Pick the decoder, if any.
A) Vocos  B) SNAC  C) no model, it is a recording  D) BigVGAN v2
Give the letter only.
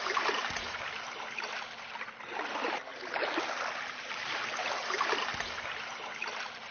C